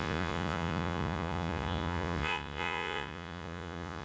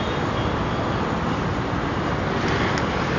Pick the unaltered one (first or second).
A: second